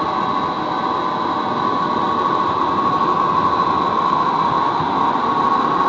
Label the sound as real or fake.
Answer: real